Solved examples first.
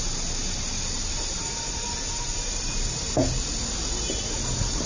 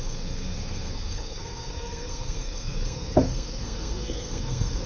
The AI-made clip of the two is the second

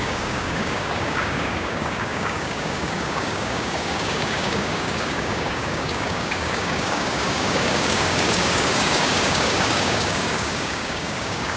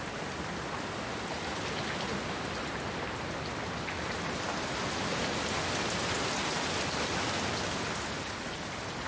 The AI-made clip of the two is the first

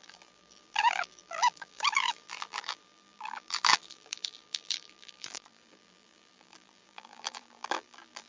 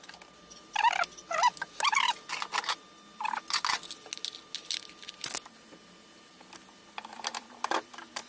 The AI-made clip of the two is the first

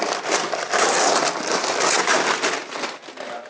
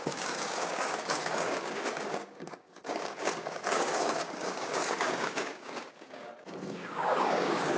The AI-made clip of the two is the second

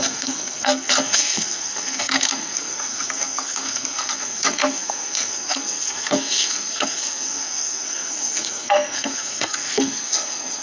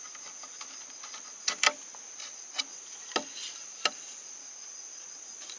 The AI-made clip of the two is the first